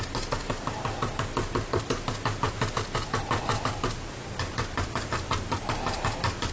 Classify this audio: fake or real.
real